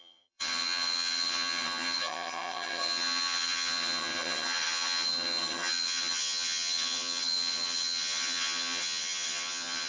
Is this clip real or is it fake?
fake